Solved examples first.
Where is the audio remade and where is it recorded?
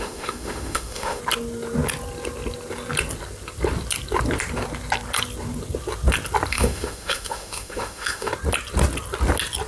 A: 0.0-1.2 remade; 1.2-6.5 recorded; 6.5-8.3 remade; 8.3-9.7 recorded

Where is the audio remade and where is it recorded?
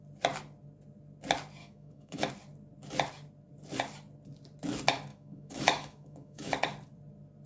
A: 0.0-1.6 recorded; 1.6-2.3 remade; 2.3-5.1 recorded; 5.1-6.5 remade; 6.5-7.5 recorded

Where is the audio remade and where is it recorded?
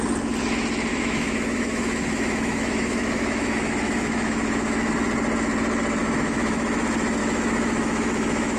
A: 0.0-0.9 recorded; 0.9-4.9 remade; 4.9-6.0 recorded; 6.0-6.8 remade; 6.8-7.2 recorded; 7.2-8.6 remade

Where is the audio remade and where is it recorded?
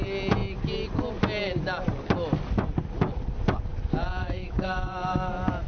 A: 0.0-4.2 recorded; 4.2-5.3 remade; 5.3-5.7 recorded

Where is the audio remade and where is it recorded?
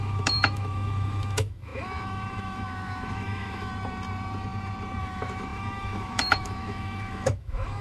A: 0.0-3.7 remade; 3.7-5.0 recorded; 5.0-7.8 remade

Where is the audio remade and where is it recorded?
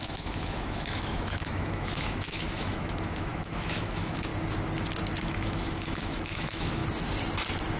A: 0.0-4.3 remade; 4.3-5.2 recorded; 5.2-6.8 remade; 6.8-7.8 recorded